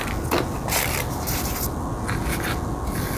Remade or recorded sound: recorded